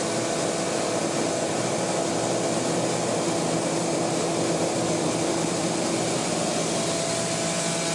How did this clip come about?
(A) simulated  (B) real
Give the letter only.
B